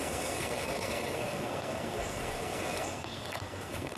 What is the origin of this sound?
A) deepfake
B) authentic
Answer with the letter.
A